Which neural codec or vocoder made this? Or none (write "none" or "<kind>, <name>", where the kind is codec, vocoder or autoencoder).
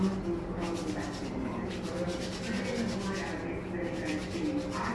none